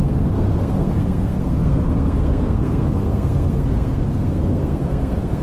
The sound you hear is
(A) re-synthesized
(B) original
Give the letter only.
A